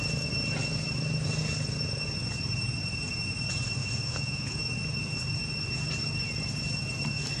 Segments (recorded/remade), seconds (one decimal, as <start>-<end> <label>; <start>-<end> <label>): 0.0-3.8 recorded; 3.8-4.6 remade; 4.6-7.4 recorded